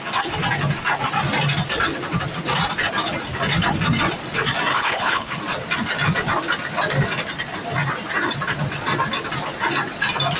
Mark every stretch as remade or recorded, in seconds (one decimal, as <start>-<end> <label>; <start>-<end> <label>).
0.0-4.7 recorded; 4.7-5.4 remade; 5.4-10.4 recorded